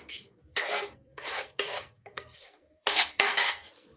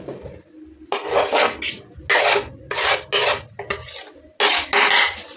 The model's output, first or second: first